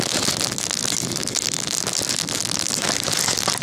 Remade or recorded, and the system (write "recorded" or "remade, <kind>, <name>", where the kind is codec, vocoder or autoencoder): recorded